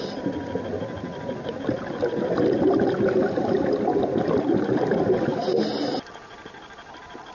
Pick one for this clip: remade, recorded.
recorded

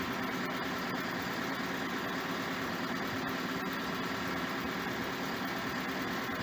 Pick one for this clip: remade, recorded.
recorded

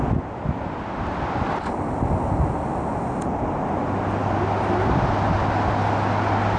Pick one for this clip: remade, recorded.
recorded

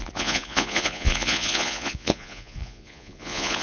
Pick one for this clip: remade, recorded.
remade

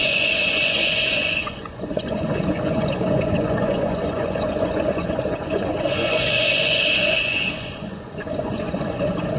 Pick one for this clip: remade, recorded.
remade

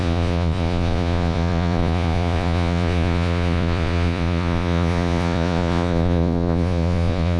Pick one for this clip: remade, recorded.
remade